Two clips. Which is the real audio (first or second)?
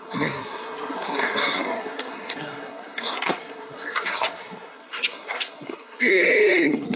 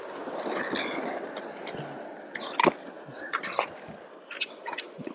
second